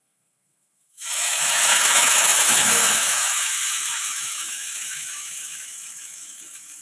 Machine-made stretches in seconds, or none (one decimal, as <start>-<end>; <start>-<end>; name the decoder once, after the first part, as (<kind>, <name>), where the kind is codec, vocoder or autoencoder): 0.0-6.8 (autoencoder, DAC-VAE)